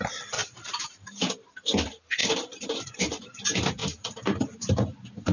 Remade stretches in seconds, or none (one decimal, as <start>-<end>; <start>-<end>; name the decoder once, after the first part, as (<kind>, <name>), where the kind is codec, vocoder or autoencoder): 0.4-1.3 (vocoder, BigVGAN v2); 2.2-3.4; 3.8-4.7